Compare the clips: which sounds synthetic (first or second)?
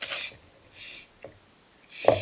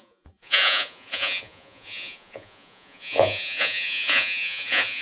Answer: second